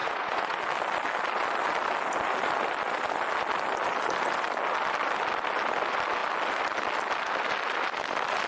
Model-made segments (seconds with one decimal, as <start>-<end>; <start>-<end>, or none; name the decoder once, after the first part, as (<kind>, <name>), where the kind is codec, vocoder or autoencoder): 0.0-0.6 (vocoder, Vocos)